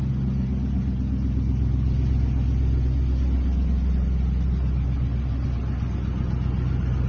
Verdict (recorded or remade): recorded